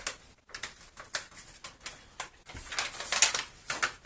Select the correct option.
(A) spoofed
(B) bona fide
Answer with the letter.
B